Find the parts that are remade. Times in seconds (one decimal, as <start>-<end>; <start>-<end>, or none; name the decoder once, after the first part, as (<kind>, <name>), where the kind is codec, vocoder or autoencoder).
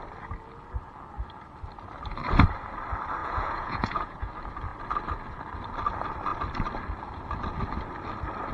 3.2-4.3 (vocoder, Vocos)